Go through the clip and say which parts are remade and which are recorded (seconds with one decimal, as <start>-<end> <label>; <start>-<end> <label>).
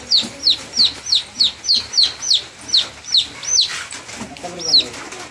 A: 0.0-5.3 recorded